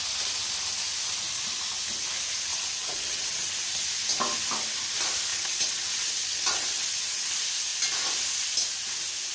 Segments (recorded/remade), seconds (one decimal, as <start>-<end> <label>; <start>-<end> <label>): 0.0-2.5 recorded; 2.5-3.5 remade; 3.5-5.3 recorded; 5.3-7.3 remade; 7.3-9.3 recorded